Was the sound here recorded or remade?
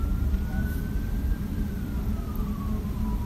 remade